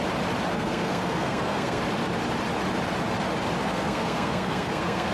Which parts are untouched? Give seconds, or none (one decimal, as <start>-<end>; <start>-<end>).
0.0-0.5; 1.8-3.6